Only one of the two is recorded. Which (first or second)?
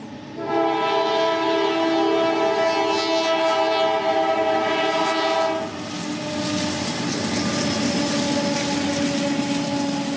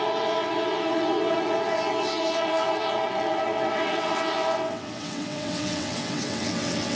first